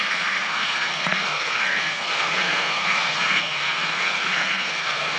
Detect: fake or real fake